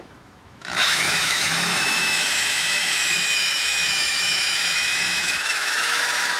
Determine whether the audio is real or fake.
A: fake